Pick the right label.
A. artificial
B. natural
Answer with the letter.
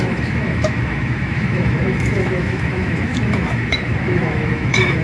A